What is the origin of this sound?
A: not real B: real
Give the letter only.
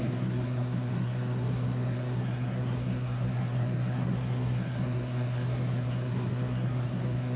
A